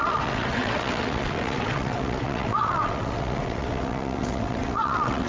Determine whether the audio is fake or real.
fake